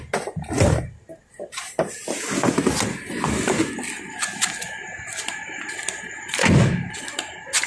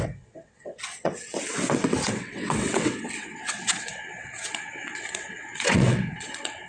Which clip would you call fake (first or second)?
second